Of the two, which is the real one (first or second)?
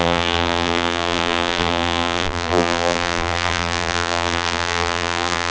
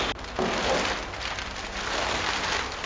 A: second